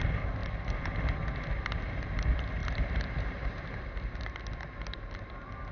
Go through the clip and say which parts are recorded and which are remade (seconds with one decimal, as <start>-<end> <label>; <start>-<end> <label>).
0.0-0.4 recorded; 0.4-1.0 remade; 1.0-2.6 recorded; 2.6-3.8 remade; 3.8-5.7 recorded